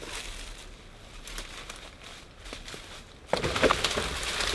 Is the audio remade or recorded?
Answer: recorded